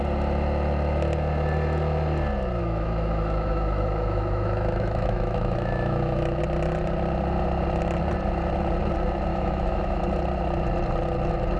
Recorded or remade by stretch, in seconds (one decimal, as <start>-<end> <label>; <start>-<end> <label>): 0.0-2.6 recorded; 2.6-6.4 remade; 6.4-9.3 recorded; 9.3-10.0 remade; 10.0-11.6 recorded

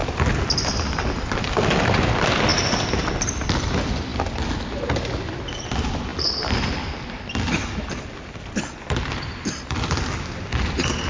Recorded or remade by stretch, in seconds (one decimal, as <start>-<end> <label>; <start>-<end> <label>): 0.0-2.5 recorded; 2.5-3.1 remade; 3.1-11.1 recorded